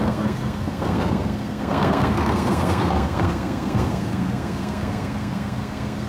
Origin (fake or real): fake